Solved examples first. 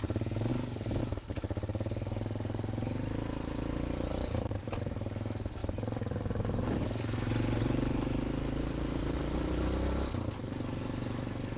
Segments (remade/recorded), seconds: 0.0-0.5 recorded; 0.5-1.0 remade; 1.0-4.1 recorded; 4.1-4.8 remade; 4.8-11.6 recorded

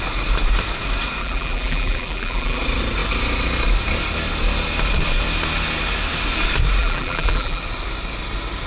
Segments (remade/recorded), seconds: 0.0-1.2 recorded; 1.2-2.6 remade; 2.6-6.8 recorded; 6.8-7.6 remade; 7.6-8.7 recorded

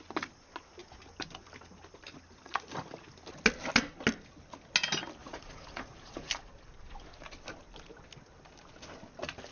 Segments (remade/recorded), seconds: 0.0-5.2 recorded; 5.2-6.3 remade; 6.3-9.5 recorded

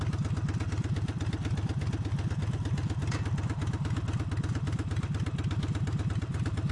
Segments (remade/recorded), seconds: 0.0-6.7 recorded